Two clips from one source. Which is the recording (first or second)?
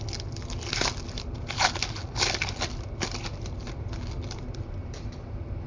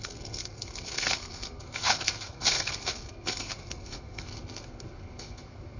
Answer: first